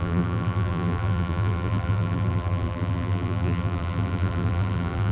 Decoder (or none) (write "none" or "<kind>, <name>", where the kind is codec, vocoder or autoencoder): vocoder, BigVGAN v2